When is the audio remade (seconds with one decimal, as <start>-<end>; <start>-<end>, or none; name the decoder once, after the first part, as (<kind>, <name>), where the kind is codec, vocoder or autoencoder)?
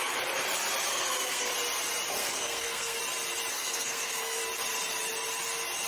0.9-1.5 (codec, SNAC); 2.2-3.0; 3.5-4.4